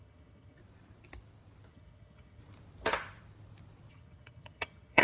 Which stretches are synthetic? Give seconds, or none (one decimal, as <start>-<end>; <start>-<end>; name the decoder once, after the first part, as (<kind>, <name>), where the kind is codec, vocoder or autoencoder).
0.0-0.6 (vocoder, HiFi-GAN); 1.7-2.4; 3.9-5.0